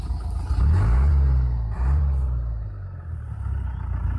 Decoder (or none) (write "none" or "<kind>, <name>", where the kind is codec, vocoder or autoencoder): none